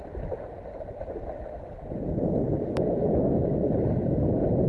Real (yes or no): yes